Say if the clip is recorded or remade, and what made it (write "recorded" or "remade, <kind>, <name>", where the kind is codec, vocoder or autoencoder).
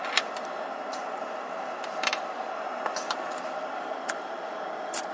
remade, vocoder, BigVGAN v2